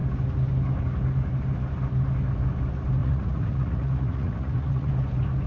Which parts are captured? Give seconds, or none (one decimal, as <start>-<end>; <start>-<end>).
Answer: 0.0-3.0; 4.9-5.5